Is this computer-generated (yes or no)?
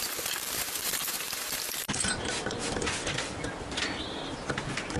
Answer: yes